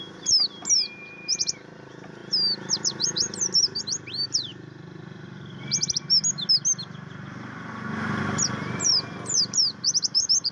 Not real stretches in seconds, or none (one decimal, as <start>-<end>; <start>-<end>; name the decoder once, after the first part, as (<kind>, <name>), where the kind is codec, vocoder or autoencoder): none